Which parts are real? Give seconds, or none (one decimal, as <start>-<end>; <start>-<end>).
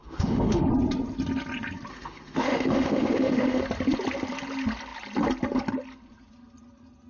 0.7-1.9; 3.6-7.1